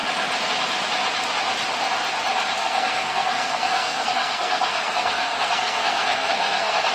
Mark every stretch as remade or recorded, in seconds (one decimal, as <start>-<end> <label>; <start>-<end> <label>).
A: 0.0-2.6 recorded; 2.6-6.9 remade

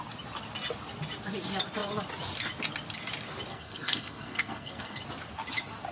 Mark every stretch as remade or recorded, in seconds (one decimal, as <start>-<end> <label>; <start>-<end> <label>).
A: 0.0-3.5 recorded; 3.5-5.0 remade; 5.0-5.9 recorded